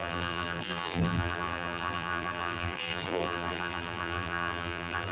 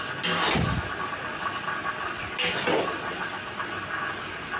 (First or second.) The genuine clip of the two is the second